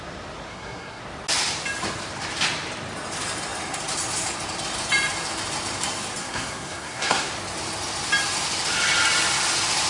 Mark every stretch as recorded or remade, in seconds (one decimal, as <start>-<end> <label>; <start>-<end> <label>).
0.0-0.5 recorded; 0.5-1.0 remade; 1.0-6.2 recorded; 6.2-7.3 remade; 7.3-9.9 recorded